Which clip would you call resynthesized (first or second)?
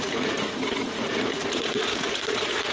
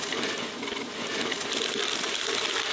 first